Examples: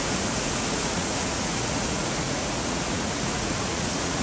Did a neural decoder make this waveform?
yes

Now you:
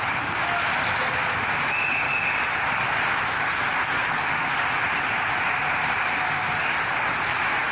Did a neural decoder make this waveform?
no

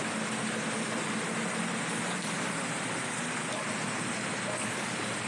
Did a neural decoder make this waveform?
no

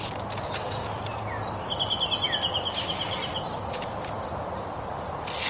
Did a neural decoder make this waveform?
no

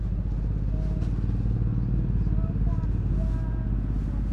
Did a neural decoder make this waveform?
no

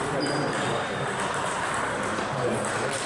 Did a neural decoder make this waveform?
no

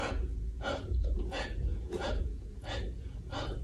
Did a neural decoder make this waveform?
yes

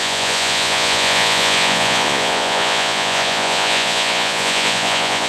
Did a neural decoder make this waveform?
yes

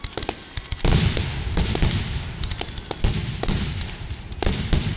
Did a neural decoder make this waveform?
no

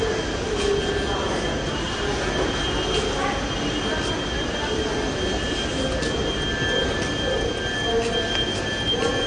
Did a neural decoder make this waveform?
no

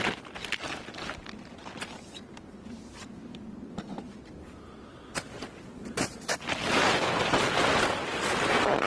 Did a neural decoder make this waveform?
no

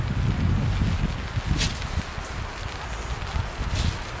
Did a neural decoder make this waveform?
no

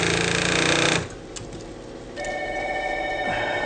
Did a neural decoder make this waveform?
no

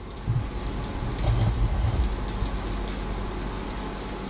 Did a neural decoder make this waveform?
no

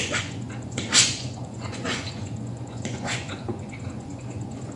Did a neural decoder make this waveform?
yes